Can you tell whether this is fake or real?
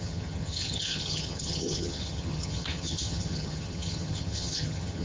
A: fake